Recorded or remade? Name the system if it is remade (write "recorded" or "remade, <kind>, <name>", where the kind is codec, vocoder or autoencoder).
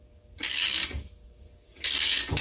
remade, codec, DAC